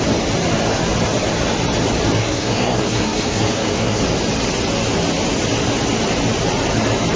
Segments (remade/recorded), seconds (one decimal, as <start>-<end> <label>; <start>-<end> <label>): 0.0-2.2 recorded; 2.2-4.0 remade; 4.0-7.2 recorded